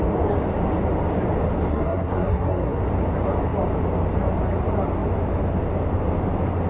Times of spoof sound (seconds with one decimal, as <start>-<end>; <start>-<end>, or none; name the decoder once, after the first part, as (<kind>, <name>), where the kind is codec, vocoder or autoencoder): 1.7-2.8 (codec, SNAC)